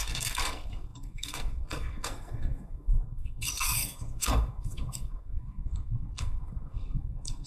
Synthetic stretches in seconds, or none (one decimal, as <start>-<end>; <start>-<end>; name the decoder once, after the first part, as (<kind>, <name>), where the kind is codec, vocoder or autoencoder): 0.0-7.5 (codec, SNAC)